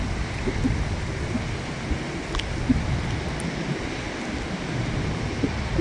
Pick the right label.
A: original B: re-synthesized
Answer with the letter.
A